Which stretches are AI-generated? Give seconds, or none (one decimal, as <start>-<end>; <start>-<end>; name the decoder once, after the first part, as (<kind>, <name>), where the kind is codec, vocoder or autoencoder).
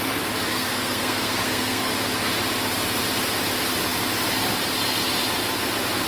0.5-1.9 (codec, SNAC)